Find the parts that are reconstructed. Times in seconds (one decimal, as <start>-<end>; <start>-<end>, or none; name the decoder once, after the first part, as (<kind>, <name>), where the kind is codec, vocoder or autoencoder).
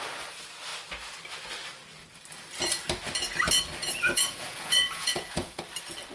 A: 3.8-5.6 (vocoder, Vocos)